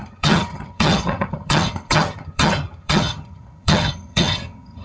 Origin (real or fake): fake